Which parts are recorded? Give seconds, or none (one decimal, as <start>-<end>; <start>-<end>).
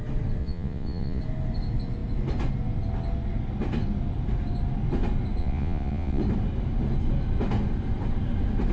0.0-0.4; 1.2-5.4; 6.2-8.7